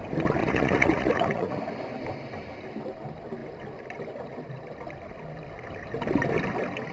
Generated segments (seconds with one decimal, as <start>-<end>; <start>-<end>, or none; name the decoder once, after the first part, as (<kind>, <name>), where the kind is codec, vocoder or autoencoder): 0.4-1.6 (vocoder, Vocos)